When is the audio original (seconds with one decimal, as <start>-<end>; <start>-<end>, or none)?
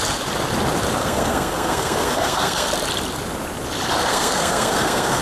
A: 0.0-1.0; 2.7-4.1